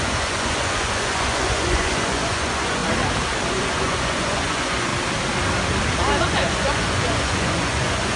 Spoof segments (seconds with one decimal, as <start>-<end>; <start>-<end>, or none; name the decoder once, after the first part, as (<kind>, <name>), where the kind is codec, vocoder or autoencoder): 0.0-2.8 (vocoder, Vocos); 3.5-4.9; 6.2-8.2